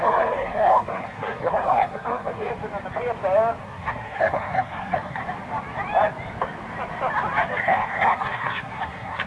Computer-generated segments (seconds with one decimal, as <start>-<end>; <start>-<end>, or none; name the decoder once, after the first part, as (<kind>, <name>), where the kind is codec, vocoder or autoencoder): 0.0-2.5 (codec, SNAC); 3.6-5.2; 7.6-9.3